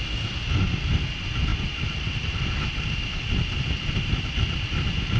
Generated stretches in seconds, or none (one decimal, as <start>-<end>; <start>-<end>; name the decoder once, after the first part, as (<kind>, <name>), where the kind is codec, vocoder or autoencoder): 1.5-4.5 (vocoder, BigVGAN v2)